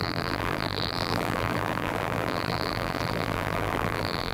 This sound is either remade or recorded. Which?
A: remade